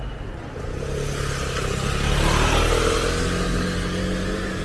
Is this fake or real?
real